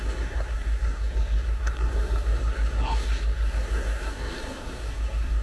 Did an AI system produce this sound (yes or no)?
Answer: yes